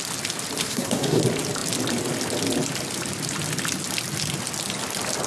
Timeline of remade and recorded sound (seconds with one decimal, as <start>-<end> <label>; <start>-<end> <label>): 0.0-0.6 recorded; 0.6-1.2 remade; 1.2-5.3 recorded